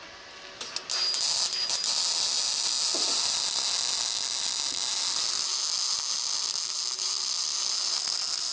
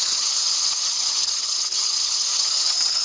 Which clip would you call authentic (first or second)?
first